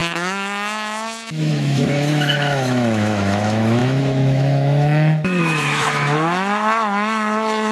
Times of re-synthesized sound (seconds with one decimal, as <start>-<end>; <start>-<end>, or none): 0.0-7.7